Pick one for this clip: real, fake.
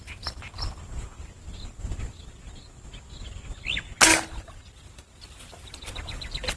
real